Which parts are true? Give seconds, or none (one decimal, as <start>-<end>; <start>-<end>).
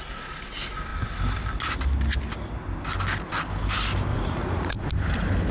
0.0-4.1; 4.9-5.5